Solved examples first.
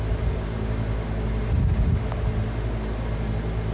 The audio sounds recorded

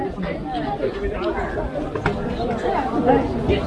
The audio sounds recorded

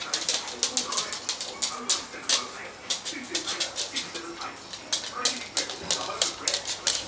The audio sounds recorded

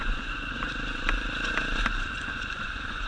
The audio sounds remade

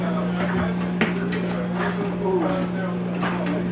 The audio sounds recorded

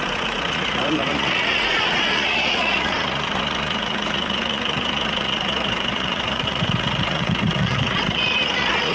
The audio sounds remade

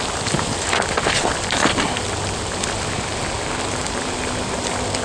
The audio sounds recorded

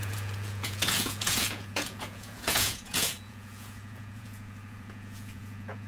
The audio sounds remade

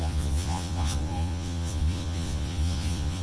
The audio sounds remade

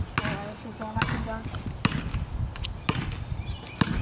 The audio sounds recorded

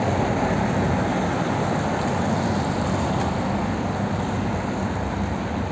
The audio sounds recorded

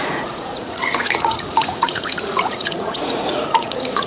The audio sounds remade